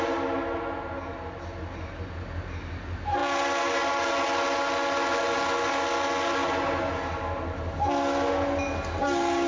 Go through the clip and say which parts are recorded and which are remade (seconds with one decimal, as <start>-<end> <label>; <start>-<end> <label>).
0.0-9.5 recorded